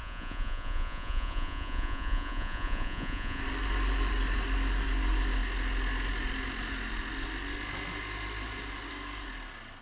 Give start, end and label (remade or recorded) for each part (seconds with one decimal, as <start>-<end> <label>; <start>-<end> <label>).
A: 0.0-3.4 remade; 3.4-9.8 recorded